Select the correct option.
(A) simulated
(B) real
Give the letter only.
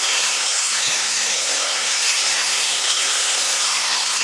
A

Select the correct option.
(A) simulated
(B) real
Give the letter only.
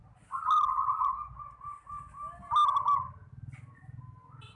B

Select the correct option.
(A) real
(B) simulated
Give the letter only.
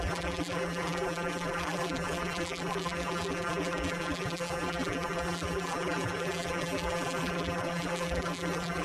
B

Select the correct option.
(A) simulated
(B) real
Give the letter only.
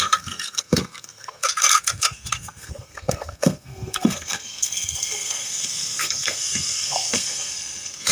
A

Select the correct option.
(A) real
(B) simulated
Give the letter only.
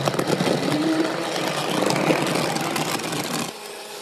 A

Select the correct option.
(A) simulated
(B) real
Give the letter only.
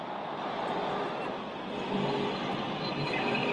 B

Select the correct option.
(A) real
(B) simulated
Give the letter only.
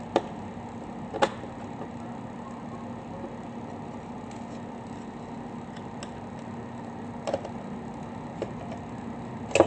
A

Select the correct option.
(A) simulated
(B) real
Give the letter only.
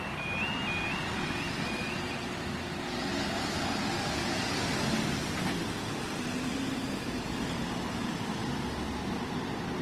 B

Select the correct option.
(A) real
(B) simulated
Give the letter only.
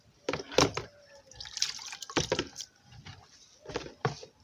A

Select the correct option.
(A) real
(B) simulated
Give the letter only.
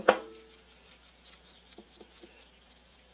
A